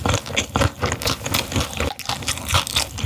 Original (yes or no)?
yes